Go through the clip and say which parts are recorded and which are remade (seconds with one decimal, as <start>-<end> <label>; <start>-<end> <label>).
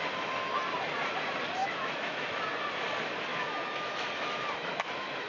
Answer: 0.0-1.6 recorded; 1.6-2.4 remade; 2.4-3.3 recorded; 3.3-5.3 remade